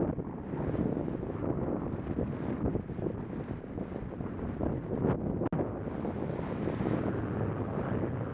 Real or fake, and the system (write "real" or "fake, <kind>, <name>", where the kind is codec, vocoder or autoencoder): real